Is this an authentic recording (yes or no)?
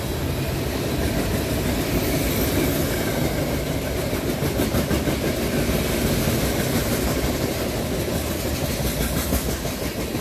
yes